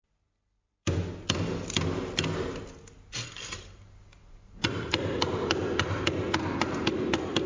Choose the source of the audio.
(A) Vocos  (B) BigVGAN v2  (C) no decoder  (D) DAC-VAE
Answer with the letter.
C